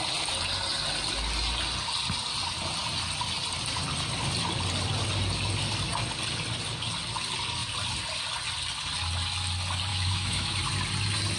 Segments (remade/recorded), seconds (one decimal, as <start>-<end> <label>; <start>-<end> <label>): 0.0-9.9 recorded; 9.9-10.6 remade; 10.6-11.4 recorded